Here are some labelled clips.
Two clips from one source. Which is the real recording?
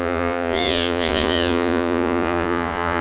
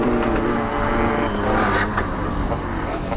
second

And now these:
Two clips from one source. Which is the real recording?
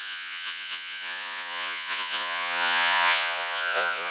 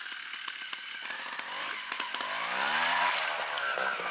second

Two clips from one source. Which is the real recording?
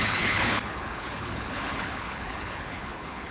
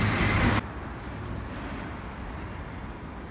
second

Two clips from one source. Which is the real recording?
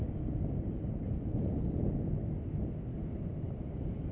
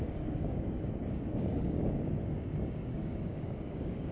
first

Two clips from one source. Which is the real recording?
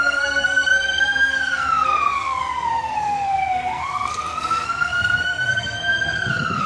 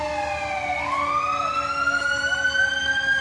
second